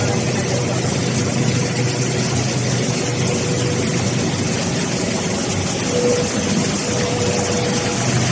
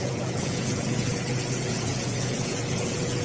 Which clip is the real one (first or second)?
first